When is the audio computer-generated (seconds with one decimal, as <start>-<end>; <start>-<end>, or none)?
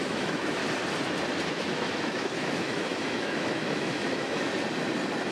0.0-0.6; 1.5-4.5